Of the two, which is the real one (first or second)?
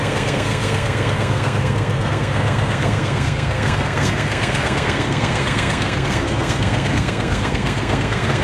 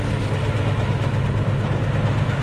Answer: second